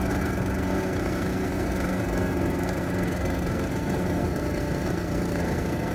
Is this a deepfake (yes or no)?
yes